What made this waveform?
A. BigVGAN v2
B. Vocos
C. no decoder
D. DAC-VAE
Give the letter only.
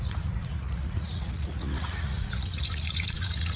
B